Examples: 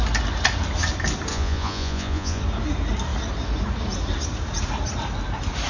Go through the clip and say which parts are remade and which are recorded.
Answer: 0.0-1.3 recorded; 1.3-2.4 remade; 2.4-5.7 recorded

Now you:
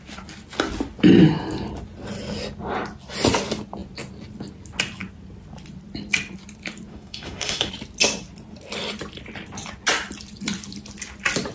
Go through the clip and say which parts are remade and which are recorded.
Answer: 0.0-6.9 recorded; 6.9-7.7 remade; 7.7-11.5 recorded

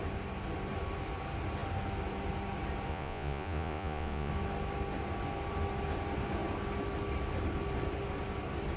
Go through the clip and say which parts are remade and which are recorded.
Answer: 0.0-2.9 recorded; 2.9-4.3 remade; 4.3-8.8 recorded

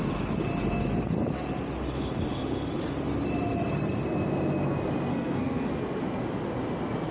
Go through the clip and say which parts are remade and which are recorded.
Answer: 0.0-5.1 recorded; 5.1-5.7 remade; 5.7-7.1 recorded

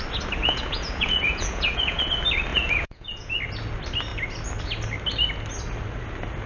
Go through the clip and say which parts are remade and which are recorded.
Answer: 0.0-0.4 recorded; 0.4-2.1 remade; 2.1-2.5 recorded; 2.5-3.4 remade; 3.4-6.5 recorded

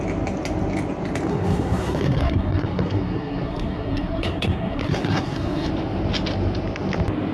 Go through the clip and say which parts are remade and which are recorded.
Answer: 0.0-1.3 recorded; 1.3-5.7 remade; 5.7-7.3 recorded

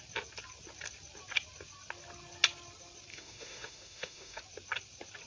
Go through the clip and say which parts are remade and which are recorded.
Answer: 0.0-3.1 recorded; 3.1-4.4 remade; 4.4-5.3 recorded